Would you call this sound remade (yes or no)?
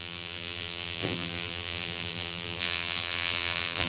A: yes